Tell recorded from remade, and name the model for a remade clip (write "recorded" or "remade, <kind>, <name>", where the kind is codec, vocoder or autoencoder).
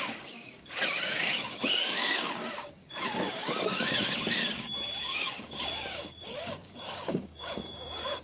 remade, codec, DAC